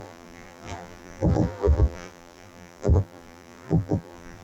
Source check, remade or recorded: remade